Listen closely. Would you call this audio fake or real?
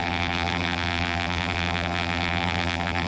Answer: fake